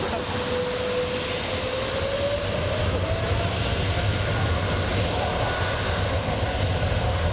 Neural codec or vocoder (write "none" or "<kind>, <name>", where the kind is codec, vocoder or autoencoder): none